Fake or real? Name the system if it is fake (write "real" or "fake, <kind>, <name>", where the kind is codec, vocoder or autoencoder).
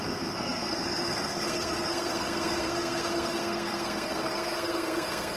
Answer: fake, codec, SNAC